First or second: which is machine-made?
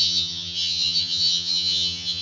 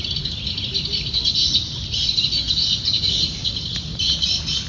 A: first